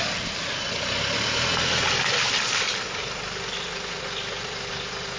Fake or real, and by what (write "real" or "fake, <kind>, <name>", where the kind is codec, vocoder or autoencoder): real